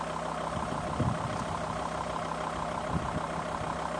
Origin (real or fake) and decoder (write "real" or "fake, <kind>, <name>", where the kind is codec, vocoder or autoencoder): real